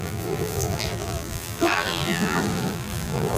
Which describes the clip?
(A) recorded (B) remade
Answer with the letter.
B